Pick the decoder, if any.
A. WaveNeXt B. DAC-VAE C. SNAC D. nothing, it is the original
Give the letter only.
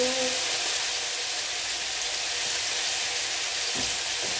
D